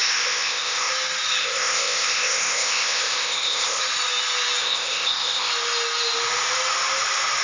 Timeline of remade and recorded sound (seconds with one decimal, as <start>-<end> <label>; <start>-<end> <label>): 0.0-0.9 remade; 0.9-1.4 recorded; 1.4-3.8 remade; 3.8-4.6 recorded; 4.6-5.5 remade; 5.5-7.4 recorded